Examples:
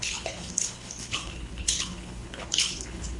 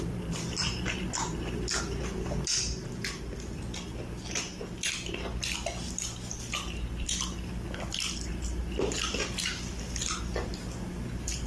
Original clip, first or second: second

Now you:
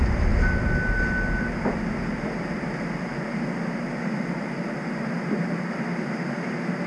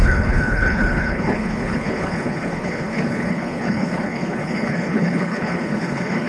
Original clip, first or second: first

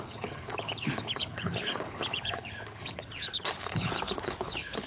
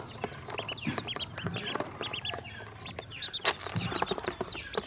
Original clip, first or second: second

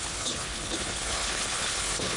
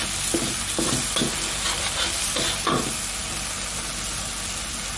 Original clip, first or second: second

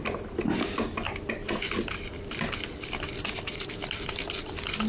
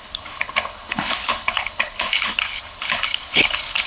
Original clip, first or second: first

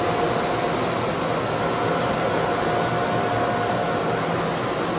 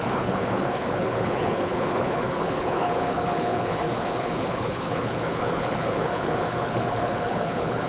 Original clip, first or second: first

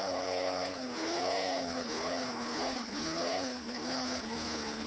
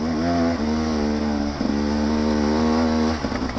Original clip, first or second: second